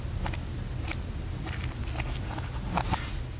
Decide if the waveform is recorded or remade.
recorded